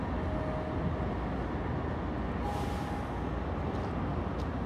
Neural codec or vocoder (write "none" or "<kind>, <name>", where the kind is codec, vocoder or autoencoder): none